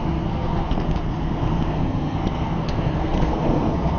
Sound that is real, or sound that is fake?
fake